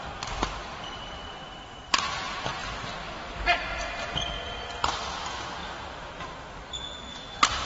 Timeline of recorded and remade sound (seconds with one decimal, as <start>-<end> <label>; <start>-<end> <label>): 0.0-0.6 recorded; 0.6-1.7 remade; 1.7-2.6 recorded; 2.6-4.1 remade; 4.1-7.7 recorded